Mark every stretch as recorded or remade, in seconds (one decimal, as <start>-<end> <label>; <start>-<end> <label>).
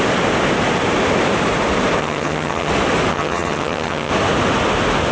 0.0-2.0 recorded; 2.0-2.7 remade; 2.7-3.1 recorded; 3.1-4.1 remade; 4.1-5.1 recorded